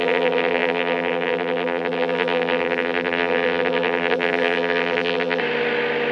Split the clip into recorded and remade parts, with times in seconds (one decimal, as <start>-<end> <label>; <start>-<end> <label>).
0.0-5.4 remade; 5.4-6.1 recorded